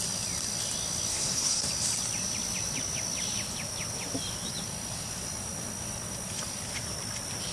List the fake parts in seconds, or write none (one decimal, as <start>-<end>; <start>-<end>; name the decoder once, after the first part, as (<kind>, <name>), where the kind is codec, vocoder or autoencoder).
1.1-1.7 (codec, SNAC)